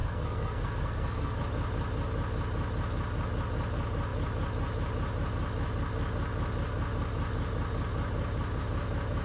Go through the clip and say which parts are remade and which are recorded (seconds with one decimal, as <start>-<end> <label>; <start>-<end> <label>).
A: 0.0-1.4 remade; 1.4-9.2 recorded